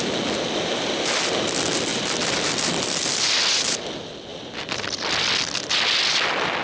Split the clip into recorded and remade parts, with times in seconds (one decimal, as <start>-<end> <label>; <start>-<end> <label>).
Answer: 0.0-1.9 recorded; 1.9-3.2 remade; 3.2-4.3 recorded; 4.3-5.2 remade; 5.2-6.6 recorded